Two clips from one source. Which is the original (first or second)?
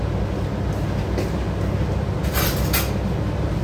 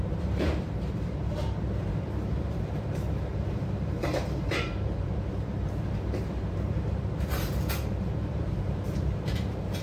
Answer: first